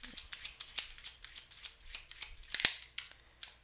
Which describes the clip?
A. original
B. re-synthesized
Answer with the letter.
A